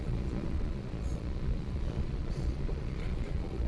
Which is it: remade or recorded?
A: remade